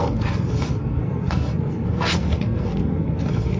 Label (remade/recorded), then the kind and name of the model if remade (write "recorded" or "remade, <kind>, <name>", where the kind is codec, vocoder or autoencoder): remade, codec, SNAC